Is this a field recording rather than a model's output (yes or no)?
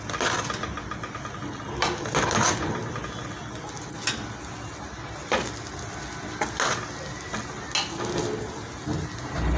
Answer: yes